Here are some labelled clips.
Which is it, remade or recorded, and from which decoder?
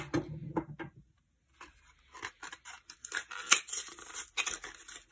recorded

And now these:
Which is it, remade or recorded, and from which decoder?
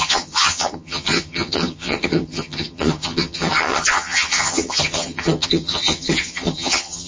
remade, vocoder, HiFi-GAN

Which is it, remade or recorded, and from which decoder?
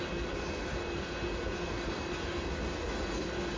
recorded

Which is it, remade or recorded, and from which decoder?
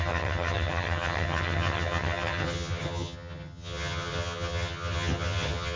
remade, vocoder, HiFi-GAN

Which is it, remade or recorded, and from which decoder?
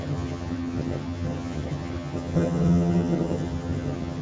remade, vocoder, HiFi-GAN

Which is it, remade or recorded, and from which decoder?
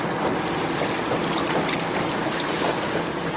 recorded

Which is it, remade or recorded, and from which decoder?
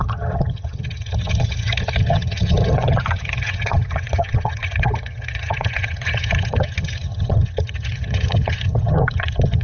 remade, vocoder, HiFi-GAN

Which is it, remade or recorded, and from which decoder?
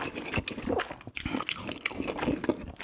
recorded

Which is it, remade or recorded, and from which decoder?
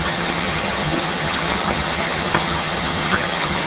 remade, vocoder, HiFi-GAN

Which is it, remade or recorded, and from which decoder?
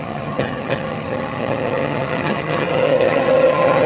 remade, vocoder, HiFi-GAN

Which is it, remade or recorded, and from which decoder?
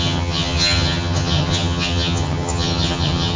remade, vocoder, HiFi-GAN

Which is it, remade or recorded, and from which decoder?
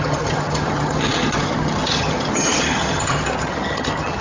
remade, vocoder, HiFi-GAN